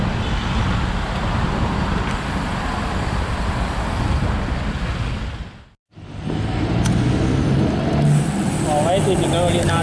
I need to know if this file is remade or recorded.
recorded